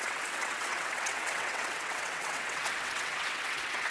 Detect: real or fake fake